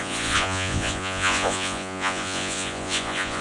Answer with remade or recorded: remade